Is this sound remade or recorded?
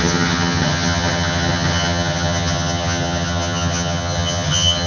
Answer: remade